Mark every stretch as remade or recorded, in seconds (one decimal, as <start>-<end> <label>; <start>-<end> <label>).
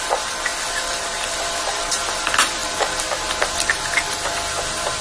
0.0-0.5 recorded; 0.5-1.8 remade; 1.8-5.0 recorded